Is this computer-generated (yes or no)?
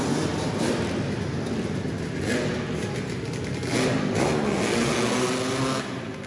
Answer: no